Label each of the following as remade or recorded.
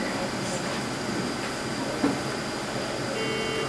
recorded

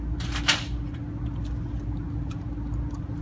recorded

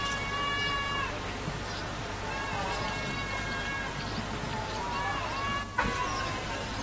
recorded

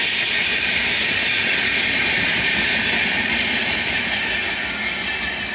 recorded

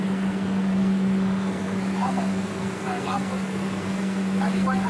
remade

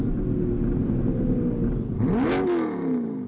recorded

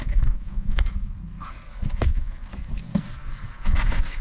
remade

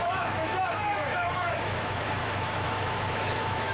remade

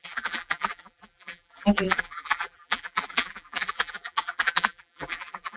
remade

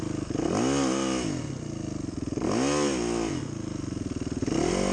recorded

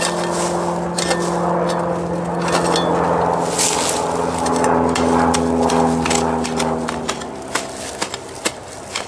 recorded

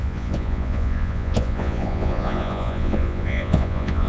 remade